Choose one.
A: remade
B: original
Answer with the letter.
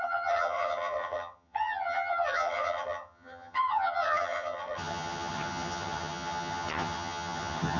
A